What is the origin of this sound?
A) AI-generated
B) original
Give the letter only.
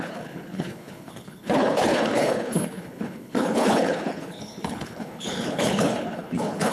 A